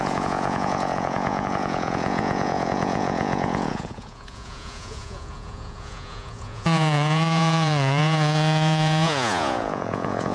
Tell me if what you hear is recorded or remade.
remade